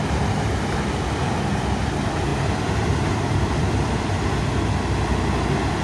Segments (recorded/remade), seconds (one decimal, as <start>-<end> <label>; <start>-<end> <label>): 0.0-2.3 recorded; 2.3-4.4 remade; 4.4-5.8 recorded